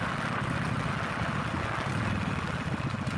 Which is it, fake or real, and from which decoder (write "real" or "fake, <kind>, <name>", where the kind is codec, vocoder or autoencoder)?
real